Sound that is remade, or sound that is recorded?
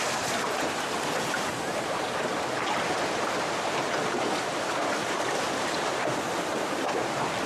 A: recorded